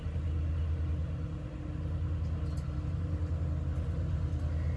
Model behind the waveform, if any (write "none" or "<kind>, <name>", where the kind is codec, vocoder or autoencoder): none